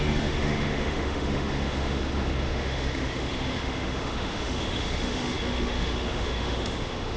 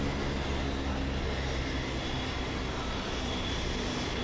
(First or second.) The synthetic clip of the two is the first